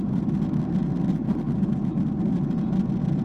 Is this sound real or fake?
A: real